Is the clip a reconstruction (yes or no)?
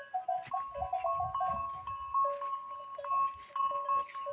no